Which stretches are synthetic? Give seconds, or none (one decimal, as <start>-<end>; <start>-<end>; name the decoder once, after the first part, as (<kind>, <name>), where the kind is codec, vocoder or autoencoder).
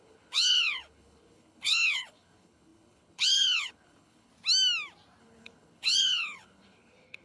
0.0-4.3 (codec, HILCodec); 5.2-7.2